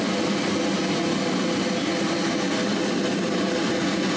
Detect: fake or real real